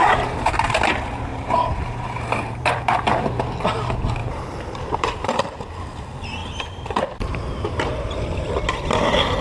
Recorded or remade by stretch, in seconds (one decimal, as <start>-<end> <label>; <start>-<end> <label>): 0.0-1.3 recorded; 1.3-3.0 remade; 3.0-4.2 recorded; 4.2-5.4 remade; 5.4-6.4 recorded; 6.4-7.9 remade; 7.9-9.4 recorded

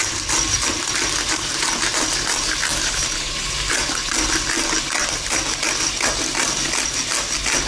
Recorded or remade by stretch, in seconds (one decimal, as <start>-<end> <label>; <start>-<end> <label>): 0.0-7.7 recorded

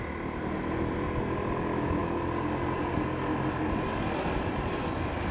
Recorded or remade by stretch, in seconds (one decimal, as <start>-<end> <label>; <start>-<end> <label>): 0.0-5.3 recorded

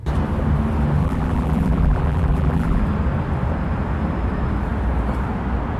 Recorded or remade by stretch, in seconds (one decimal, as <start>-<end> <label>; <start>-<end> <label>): 0.0-1.0 recorded; 1.0-2.8 remade; 2.8-5.8 recorded

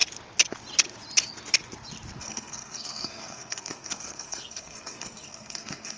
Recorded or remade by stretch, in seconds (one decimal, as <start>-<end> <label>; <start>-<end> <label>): 0.0-2.2 recorded; 2.2-6.0 remade

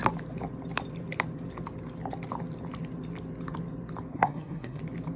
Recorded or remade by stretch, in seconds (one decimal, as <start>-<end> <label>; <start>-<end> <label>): 0.0-4.1 recorded; 4.1-4.8 remade; 4.8-5.2 recorded